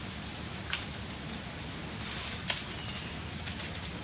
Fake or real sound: real